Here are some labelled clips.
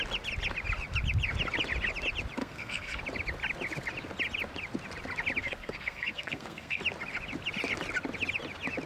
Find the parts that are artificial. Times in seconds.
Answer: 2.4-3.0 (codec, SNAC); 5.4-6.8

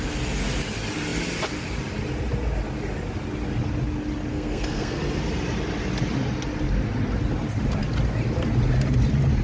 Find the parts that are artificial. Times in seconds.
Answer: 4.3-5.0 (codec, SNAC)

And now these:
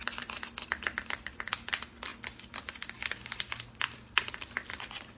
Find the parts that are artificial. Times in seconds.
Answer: 0.0-2.1 (vocoder, BigVGAN v2); 3.7-5.2

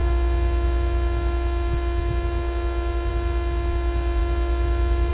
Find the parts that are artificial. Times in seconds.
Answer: none

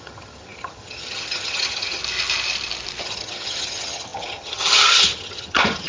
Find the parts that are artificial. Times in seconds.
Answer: 0.0-2.0 (vocoder, HiFi-GAN); 3.0-5.9

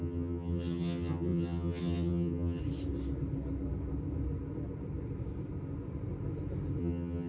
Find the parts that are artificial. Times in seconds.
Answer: 0.0-2.6 (vocoder, HiFi-GAN); 6.8-7.3

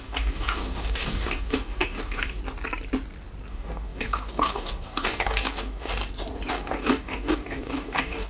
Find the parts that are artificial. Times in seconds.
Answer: 0.0-2.4 (codec, DAC); 3.5-6.0; 6.5-8.3